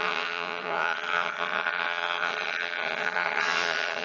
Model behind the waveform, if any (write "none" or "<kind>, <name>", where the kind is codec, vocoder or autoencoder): vocoder, HiFi-GAN